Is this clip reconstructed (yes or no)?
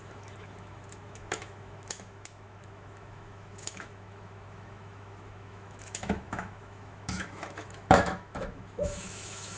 yes